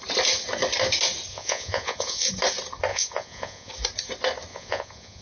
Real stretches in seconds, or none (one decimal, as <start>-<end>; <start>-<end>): 0.0-1.3; 2.3-2.9; 3.7-4.5